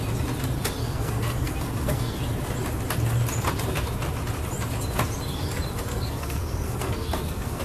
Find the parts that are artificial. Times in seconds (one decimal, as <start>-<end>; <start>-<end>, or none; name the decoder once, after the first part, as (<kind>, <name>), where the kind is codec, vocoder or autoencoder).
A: 0.8-2.2 (codec, SNAC); 5.9-7.6